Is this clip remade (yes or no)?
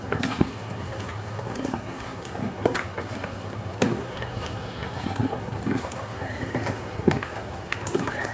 yes